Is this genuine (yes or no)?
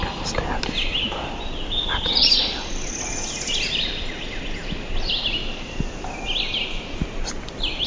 yes